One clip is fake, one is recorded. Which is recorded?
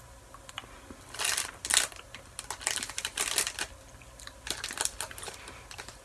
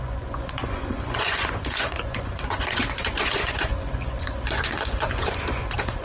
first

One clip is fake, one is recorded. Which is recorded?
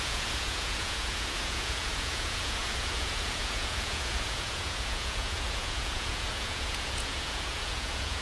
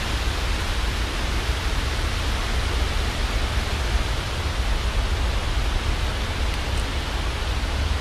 second